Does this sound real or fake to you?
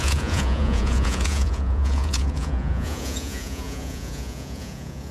fake